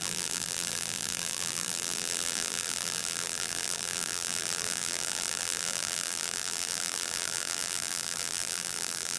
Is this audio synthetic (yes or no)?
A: yes